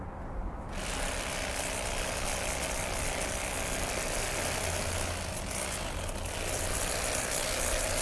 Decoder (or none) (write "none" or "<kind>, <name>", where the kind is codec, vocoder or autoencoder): none